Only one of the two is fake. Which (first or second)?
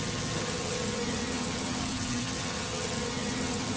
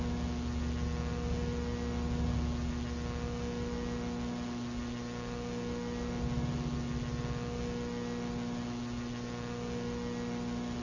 first